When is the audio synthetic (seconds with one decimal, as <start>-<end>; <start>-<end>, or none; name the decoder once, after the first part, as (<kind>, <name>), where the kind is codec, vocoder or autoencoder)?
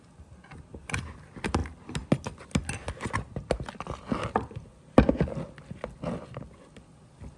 none